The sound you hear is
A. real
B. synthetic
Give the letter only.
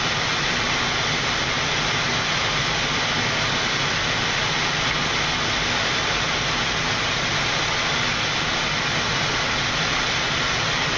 A